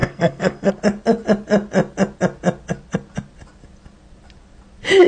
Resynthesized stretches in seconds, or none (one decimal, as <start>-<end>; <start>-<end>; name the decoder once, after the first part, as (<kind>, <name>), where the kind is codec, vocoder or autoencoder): 0.0-0.7 (codec, SNAC)